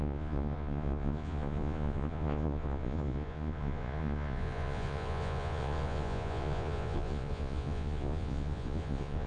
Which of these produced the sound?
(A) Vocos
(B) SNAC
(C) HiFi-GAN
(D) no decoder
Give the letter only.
A